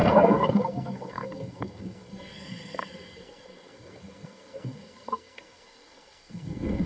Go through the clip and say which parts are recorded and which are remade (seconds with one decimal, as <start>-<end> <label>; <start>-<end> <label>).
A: 0.0-6.9 remade